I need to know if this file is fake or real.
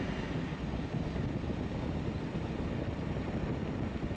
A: real